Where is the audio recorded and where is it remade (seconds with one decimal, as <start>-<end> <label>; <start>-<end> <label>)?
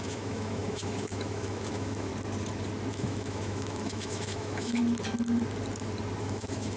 0.0-2.1 remade; 2.1-2.9 recorded; 2.9-4.8 remade; 4.8-6.2 recorded; 6.2-6.8 remade